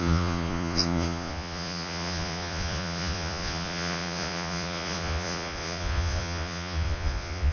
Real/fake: fake